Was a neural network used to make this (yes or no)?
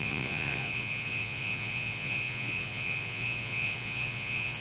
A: yes